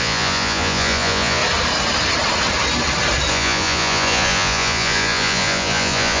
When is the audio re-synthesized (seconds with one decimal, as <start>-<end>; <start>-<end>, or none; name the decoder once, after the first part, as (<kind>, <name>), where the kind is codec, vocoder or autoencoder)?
0.0-1.4 (vocoder, Vocos); 3.3-6.2